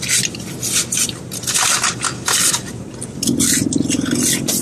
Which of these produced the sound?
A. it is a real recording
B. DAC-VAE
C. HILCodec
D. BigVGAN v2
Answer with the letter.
A